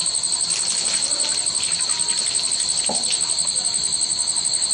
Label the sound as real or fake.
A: real